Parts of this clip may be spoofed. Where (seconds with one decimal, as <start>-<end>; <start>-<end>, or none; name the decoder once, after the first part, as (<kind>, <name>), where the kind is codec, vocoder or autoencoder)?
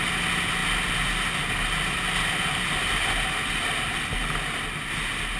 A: none